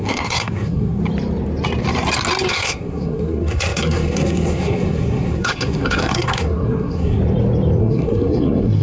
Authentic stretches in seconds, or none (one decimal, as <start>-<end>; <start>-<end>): 1.0-2.5; 7.2-7.8